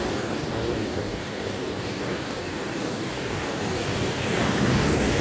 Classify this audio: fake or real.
fake